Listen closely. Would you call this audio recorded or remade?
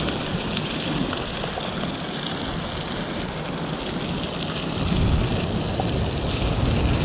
recorded